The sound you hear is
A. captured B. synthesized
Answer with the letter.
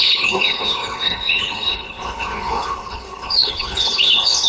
B